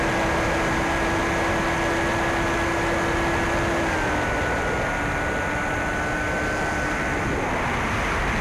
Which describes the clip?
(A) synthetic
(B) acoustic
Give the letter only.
B